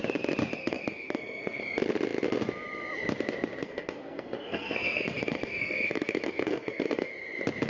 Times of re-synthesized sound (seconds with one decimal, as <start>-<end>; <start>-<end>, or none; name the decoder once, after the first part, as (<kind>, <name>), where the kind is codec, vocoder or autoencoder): 0.6-1.6 (codec, SNAC); 3.6-7.1